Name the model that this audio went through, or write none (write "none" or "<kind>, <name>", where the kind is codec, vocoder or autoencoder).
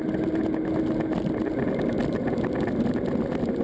none